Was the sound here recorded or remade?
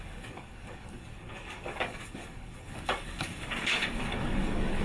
remade